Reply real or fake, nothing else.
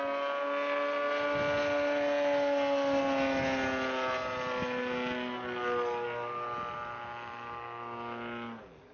real